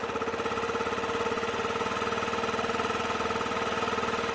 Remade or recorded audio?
recorded